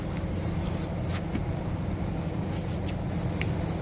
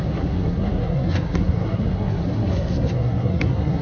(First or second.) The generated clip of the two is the second